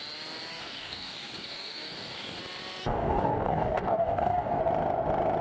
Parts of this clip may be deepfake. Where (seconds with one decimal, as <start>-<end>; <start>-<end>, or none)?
0.5-2.4; 2.8-4.6